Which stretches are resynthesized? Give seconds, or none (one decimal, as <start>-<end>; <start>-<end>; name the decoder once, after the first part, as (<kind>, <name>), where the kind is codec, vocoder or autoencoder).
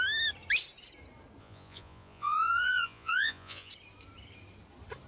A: 1.4-3.7 (vocoder, Vocos)